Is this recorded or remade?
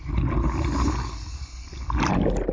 recorded